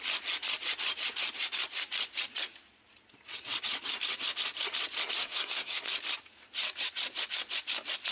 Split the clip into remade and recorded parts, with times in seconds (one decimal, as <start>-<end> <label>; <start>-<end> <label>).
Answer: 0.0-5.2 recorded; 5.2-5.8 remade; 5.8-8.1 recorded